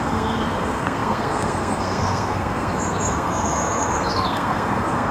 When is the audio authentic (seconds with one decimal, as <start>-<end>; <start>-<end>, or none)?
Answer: none